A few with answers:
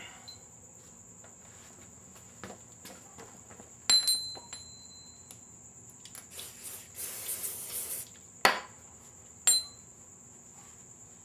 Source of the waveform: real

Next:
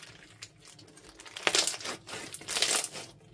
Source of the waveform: real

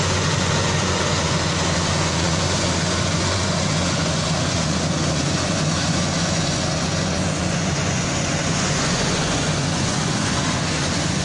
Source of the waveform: fake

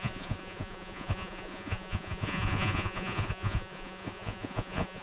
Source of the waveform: fake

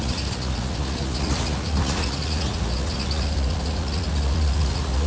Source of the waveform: fake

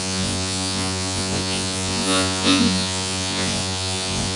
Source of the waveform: fake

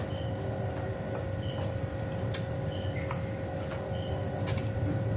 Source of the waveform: real